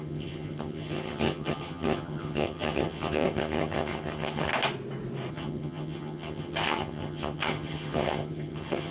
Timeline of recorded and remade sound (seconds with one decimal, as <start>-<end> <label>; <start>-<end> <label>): 0.0-4.5 remade; 4.5-5.3 recorded; 5.3-8.9 remade